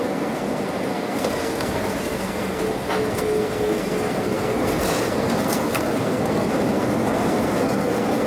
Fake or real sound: fake